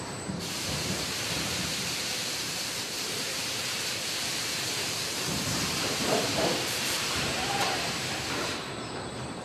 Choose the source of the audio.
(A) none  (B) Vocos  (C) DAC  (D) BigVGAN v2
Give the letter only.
D